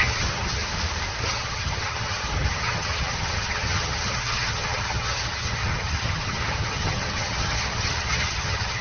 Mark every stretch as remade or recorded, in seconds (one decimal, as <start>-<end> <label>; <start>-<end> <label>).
0.0-0.6 remade; 0.6-1.2 recorded; 1.2-8.8 remade